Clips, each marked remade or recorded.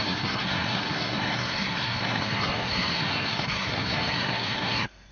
remade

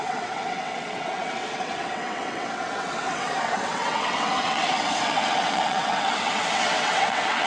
remade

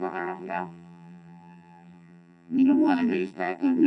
remade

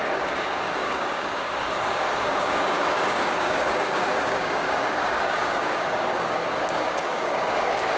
remade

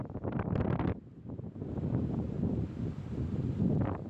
recorded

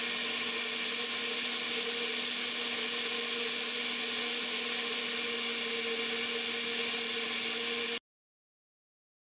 recorded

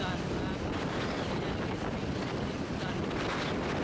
recorded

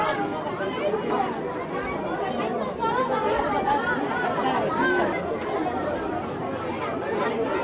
recorded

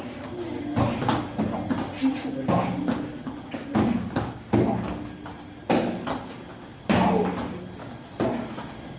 recorded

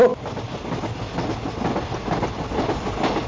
recorded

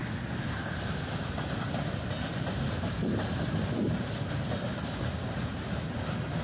recorded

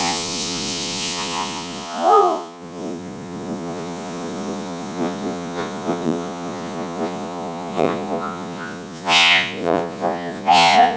remade